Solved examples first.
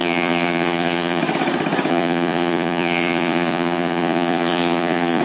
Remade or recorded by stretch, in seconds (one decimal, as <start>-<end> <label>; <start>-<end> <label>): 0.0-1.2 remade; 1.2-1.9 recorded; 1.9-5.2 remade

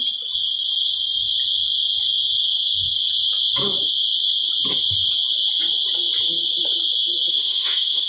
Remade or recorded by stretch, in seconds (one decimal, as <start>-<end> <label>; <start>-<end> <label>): 0.0-7.3 recorded; 7.3-8.1 remade

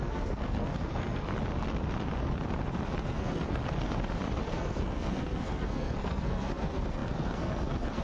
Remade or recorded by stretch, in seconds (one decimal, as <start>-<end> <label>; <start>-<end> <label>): 0.0-1.3 remade; 1.3-3.0 recorded; 3.0-3.6 remade; 3.6-4.4 recorded; 4.4-8.0 remade

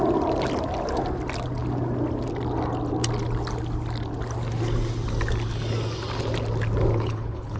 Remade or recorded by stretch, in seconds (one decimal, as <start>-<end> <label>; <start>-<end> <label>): 0.0-6.9 recorded; 6.9-7.6 remade

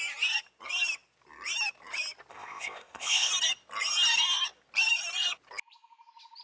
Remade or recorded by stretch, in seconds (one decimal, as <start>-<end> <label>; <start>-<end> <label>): 0.0-2.3 recorded; 2.3-3.3 remade; 3.3-6.4 recorded